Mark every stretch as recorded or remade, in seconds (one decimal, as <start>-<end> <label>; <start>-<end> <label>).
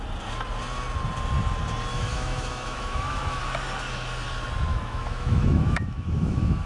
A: 0.0-1.9 recorded; 1.9-3.4 remade; 3.4-4.7 recorded; 4.7-6.7 remade